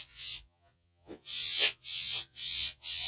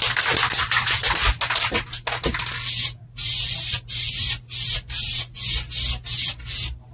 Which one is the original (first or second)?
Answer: second